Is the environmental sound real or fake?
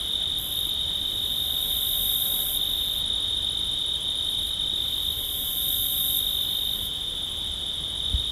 real